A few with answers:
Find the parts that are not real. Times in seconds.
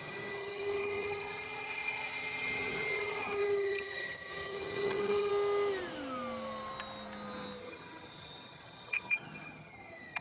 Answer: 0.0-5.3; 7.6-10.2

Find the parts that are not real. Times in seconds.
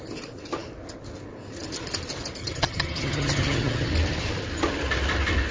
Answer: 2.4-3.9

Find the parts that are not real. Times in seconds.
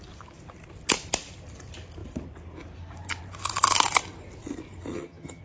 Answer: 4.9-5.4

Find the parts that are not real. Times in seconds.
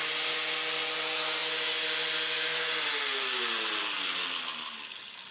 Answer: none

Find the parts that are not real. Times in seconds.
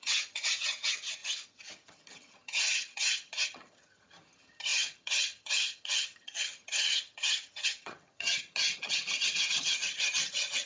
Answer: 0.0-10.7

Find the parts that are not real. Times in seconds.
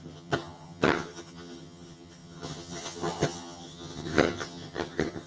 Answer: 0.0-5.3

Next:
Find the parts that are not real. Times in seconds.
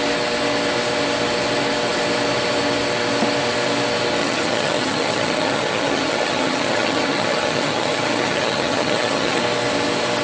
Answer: 4.2-9.4